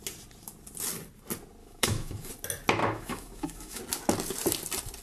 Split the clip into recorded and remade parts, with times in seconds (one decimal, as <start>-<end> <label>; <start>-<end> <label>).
0.0-1.6 recorded; 1.6-2.3 remade; 2.3-2.8 recorded; 2.8-3.8 remade; 3.8-5.0 recorded

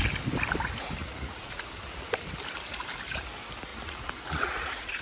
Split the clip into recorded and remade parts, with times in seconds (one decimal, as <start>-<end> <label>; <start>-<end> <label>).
0.0-1.0 recorded; 1.0-1.7 remade; 1.7-3.7 recorded; 3.7-5.0 remade

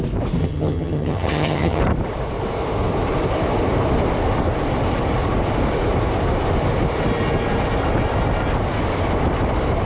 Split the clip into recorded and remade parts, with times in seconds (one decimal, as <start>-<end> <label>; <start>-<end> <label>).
0.0-0.4 recorded; 0.4-1.8 remade; 1.8-9.9 recorded

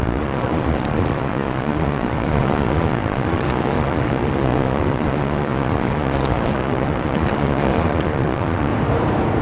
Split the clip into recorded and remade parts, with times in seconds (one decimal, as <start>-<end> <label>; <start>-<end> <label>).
0.0-8.7 remade; 8.7-9.4 recorded

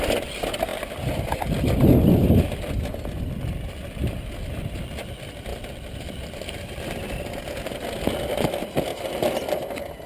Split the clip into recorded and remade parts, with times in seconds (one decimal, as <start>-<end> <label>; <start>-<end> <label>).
0.0-5.5 recorded; 5.5-7.2 remade; 7.2-10.1 recorded

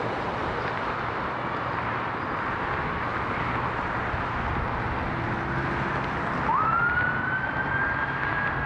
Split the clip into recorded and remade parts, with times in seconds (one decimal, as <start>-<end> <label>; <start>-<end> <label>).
0.0-8.7 recorded

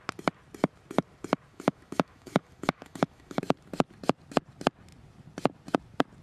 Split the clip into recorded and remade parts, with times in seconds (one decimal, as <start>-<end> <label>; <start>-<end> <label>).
0.0-1.5 recorded; 1.5-3.4 remade; 3.4-6.2 recorded